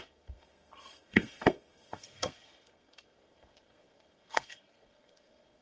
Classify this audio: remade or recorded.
remade